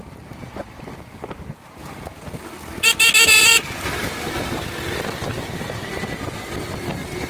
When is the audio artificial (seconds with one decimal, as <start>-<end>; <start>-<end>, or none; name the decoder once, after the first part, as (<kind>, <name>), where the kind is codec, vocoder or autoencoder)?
1.8-2.4 (vocoder, Vocos)